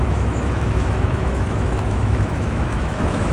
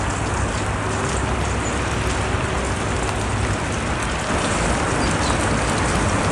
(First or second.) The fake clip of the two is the first